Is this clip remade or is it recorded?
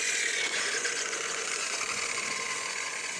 remade